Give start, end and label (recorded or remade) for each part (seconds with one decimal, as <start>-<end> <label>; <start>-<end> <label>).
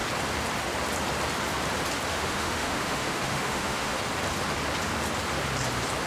0.0-2.1 recorded; 2.1-4.0 remade; 4.0-6.1 recorded